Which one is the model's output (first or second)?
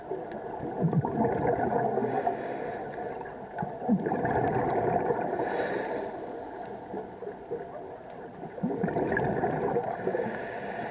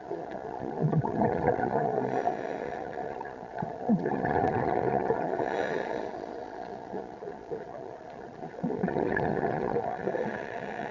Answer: second